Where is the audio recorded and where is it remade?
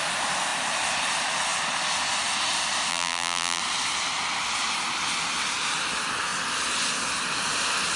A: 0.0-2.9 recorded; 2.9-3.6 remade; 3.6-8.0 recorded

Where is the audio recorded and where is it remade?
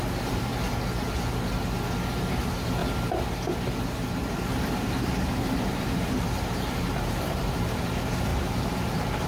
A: 0.0-0.5 remade; 0.5-2.3 recorded; 2.3-2.8 remade; 2.8-3.8 recorded; 3.8-9.3 remade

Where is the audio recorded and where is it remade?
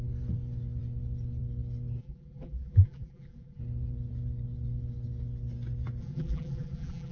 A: 0.0-2.0 recorded; 2.0-3.6 remade; 3.6-6.0 recorded; 6.0-7.1 remade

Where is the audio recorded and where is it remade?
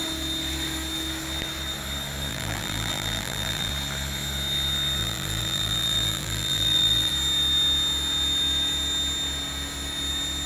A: 0.0-2.3 recorded; 2.3-3.7 remade; 3.7-5.0 recorded; 5.0-7.1 remade; 7.1-10.5 recorded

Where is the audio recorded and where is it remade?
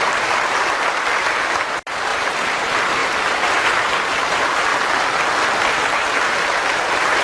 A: 0.0-1.1 recorded; 1.1-1.7 remade; 1.7-3.0 recorded; 3.0-3.6 remade; 3.6-7.2 recorded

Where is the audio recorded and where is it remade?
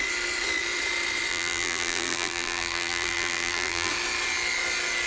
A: 0.0-1.3 recorded; 1.3-3.9 remade; 3.9-5.1 recorded